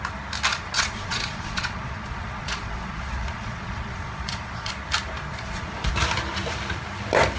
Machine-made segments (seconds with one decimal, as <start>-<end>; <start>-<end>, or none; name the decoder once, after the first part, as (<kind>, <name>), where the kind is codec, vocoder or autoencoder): 0.5-4.7 (vocoder, Vocos); 5.3-5.9